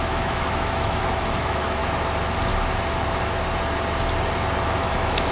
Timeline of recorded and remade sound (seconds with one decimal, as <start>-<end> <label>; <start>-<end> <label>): 0.0-1.8 remade; 1.8-4.6 recorded; 4.6-5.3 remade